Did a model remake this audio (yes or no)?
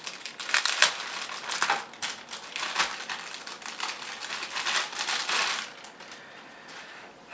no